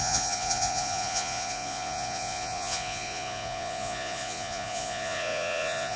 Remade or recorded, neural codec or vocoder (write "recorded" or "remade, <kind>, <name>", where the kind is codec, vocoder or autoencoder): remade, vocoder, Vocos